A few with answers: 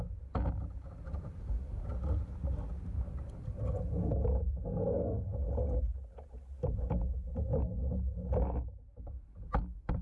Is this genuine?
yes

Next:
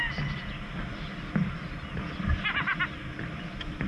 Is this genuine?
yes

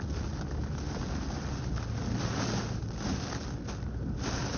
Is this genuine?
yes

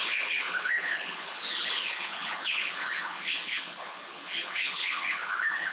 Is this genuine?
no